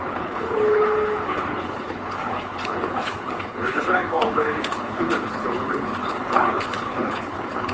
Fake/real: fake